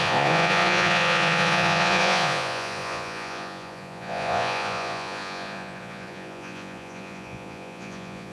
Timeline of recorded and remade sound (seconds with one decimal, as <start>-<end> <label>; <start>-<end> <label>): 0.0-8.3 remade